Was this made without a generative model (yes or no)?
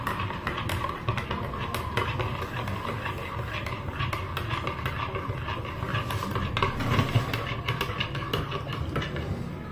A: yes